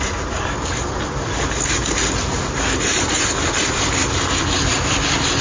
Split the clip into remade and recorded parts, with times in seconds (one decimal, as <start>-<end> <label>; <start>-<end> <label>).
0.0-5.4 recorded